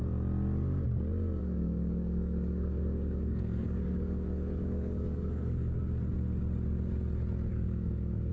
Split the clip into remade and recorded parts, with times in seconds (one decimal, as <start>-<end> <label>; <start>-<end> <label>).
0.0-1.4 recorded; 1.4-5.8 remade; 5.8-7.5 recorded; 7.5-8.3 remade